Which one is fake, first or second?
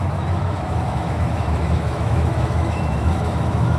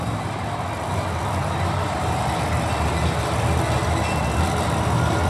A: first